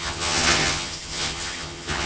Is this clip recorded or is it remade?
remade